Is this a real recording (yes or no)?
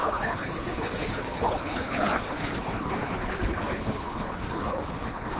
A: no